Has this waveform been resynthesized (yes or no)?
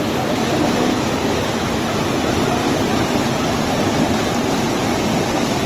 no